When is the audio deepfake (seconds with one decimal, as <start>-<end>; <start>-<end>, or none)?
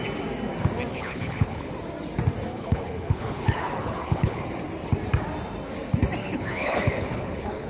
0.9-1.7; 2.5-4.4; 6.2-7.7